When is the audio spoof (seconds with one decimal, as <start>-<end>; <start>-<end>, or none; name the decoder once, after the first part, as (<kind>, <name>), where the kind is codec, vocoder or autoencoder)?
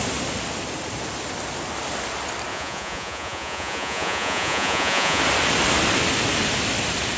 2.5-5.2 (vocoder, Vocos)